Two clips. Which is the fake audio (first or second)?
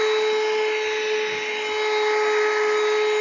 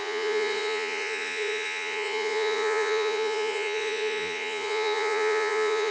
second